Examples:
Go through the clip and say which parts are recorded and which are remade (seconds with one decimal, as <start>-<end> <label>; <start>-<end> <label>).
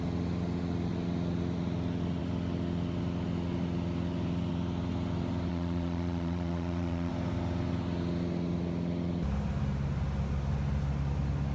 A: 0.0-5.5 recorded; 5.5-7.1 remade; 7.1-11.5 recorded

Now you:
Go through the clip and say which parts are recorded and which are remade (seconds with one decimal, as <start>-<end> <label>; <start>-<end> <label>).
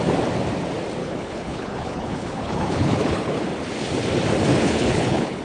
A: 0.0-1.0 recorded; 1.0-3.4 remade; 3.4-4.5 recorded; 4.5-5.4 remade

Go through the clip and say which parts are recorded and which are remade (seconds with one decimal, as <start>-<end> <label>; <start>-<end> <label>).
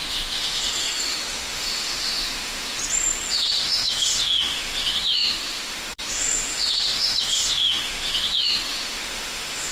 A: 0.0-2.8 remade; 2.8-3.3 recorded; 3.3-9.7 remade